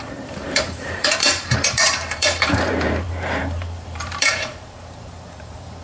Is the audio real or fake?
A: fake